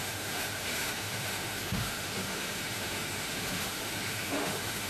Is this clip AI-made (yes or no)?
yes